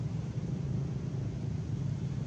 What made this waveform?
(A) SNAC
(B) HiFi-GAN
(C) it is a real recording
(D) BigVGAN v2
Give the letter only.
C